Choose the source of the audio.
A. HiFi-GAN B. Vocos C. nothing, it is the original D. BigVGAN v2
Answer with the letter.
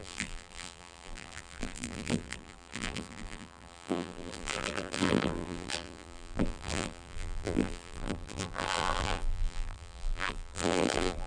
D